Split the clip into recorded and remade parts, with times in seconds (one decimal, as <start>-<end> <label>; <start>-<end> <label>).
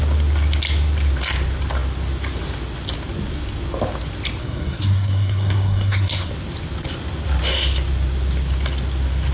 0.0-4.4 recorded; 4.4-6.3 remade; 6.3-9.3 recorded